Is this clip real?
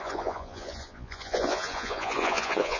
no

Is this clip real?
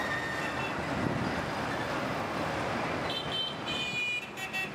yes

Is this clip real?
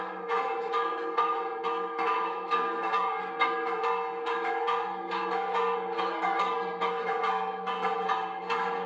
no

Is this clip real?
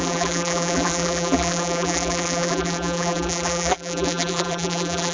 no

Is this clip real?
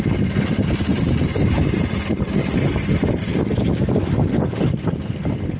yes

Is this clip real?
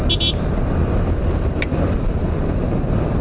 yes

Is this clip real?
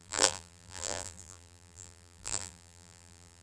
no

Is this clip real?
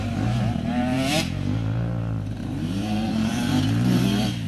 no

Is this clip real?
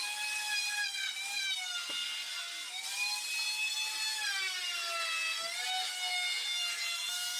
yes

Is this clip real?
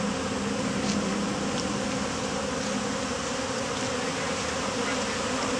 yes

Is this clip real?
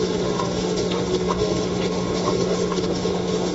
no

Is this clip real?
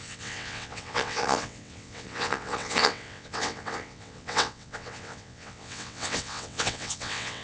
no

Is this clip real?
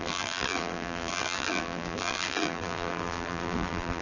no